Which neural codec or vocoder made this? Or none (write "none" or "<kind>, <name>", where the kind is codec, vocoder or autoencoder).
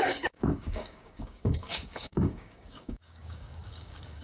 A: codec, DAC